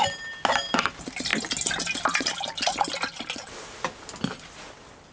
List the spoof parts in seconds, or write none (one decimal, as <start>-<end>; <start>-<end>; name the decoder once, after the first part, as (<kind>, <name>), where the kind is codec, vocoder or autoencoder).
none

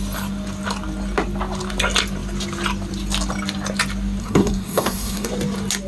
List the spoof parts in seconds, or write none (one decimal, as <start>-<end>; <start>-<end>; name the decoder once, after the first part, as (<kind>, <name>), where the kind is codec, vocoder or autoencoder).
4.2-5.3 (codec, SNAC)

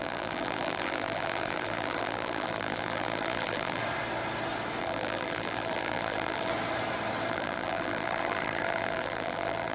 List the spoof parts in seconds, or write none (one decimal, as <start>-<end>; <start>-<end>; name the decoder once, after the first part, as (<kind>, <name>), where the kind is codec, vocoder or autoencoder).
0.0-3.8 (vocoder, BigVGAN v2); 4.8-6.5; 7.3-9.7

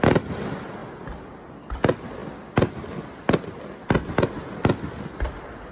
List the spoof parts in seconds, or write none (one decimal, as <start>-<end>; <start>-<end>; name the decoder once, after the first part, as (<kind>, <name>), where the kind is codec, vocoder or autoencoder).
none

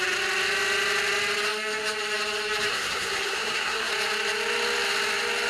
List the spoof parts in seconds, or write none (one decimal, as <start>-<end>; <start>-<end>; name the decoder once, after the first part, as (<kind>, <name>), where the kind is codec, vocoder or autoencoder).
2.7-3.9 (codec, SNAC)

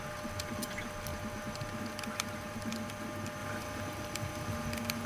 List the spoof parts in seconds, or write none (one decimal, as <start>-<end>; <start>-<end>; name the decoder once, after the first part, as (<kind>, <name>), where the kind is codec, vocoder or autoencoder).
none

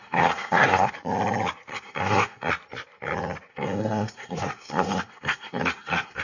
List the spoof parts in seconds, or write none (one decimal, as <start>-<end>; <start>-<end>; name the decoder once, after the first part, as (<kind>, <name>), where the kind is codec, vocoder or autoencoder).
0.0-0.9 (codec, SNAC); 1.7-2.5; 3.5-6.2